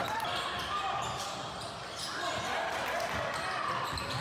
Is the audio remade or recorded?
recorded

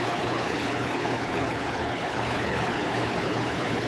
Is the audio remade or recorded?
remade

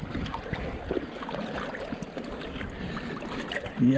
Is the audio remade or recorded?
recorded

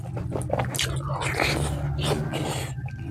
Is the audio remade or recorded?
recorded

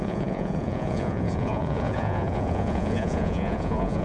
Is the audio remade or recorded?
remade